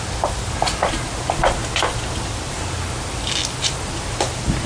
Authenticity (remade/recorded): recorded